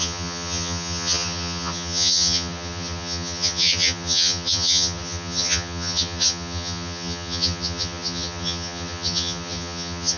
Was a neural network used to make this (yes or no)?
yes